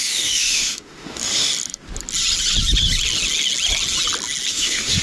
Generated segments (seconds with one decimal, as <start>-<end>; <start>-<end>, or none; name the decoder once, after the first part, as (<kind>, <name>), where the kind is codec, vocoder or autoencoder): 0.0-1.5 (autoencoder, DAC-VAE); 4.5-5.0